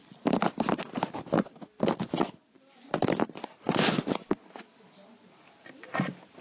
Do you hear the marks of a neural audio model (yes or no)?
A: no